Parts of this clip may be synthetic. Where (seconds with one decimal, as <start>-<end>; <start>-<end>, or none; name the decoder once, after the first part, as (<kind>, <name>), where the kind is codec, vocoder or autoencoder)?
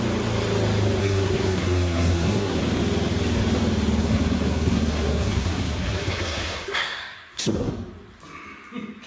1.0-2.6 (codec, SNAC); 4.0-7.7